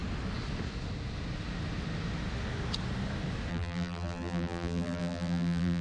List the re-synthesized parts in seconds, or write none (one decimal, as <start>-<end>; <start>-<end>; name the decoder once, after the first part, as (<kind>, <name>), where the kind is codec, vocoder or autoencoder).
3.5-5.8 (vocoder, BigVGAN v2)